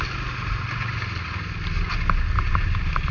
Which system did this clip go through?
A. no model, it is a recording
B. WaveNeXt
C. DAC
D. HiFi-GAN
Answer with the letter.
A